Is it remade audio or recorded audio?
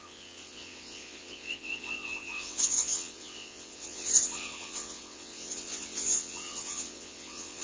remade